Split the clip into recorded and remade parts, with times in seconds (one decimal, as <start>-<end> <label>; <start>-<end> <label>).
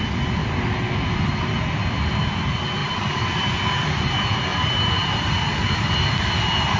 0.0-2.8 recorded; 2.8-3.5 remade; 3.5-4.5 recorded; 4.5-6.8 remade